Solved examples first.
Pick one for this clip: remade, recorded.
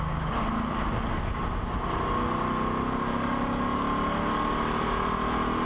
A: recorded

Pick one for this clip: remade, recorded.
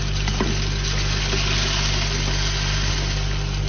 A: recorded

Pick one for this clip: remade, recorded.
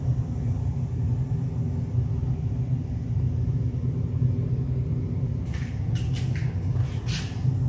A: recorded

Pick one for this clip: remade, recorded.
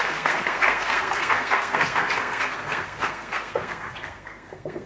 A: remade